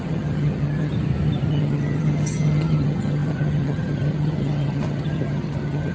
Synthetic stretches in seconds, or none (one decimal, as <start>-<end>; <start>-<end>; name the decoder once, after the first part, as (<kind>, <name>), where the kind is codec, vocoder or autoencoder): 0.0-0.9 (vocoder, HiFi-GAN); 1.5-5.9